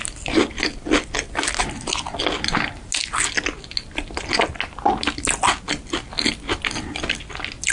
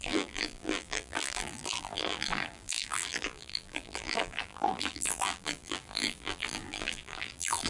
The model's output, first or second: second